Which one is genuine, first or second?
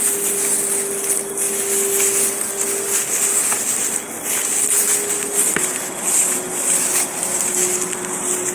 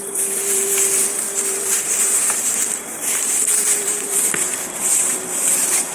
first